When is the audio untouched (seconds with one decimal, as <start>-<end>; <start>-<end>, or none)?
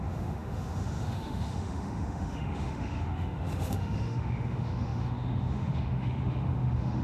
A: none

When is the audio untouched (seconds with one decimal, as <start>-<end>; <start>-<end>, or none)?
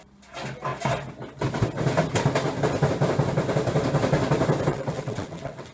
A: 0.0-4.7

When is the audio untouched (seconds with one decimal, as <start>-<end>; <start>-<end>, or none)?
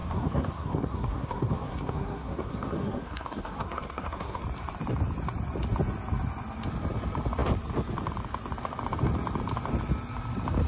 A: 4.4-10.7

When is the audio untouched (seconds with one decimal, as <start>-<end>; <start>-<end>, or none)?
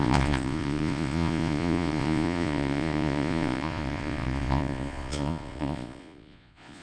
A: none